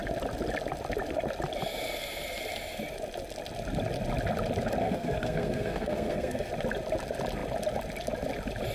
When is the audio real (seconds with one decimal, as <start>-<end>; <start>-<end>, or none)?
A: 0.0-4.8; 6.5-8.7